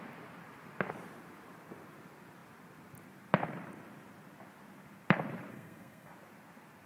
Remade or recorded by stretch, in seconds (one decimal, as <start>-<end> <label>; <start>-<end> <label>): 0.0-5.5 recorded; 5.5-6.1 remade; 6.1-6.9 recorded